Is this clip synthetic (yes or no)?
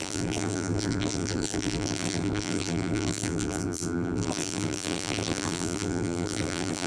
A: yes